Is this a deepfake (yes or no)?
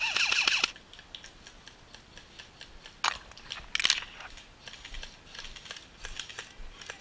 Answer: no